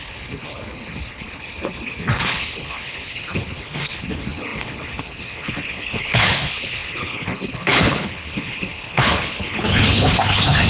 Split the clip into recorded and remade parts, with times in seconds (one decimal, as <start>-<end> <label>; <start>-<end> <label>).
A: 0.0-10.7 remade